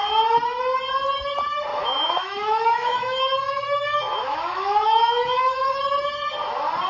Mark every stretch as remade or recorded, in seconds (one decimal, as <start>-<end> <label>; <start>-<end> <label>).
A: 0.0-1.7 recorded; 1.7-5.8 remade; 5.8-6.9 recorded